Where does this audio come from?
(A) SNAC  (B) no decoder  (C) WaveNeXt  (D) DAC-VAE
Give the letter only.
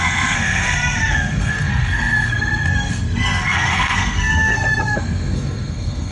A